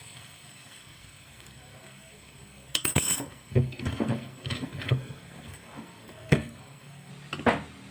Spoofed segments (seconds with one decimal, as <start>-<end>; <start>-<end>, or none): 0.0-7.1

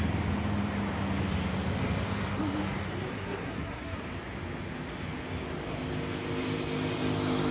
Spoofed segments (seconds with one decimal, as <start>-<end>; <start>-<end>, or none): 3.1-4.0